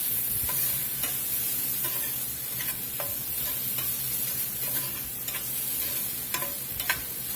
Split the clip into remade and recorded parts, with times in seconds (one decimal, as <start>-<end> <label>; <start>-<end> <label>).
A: 0.0-7.4 recorded